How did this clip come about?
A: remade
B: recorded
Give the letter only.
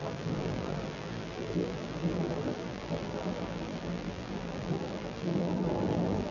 A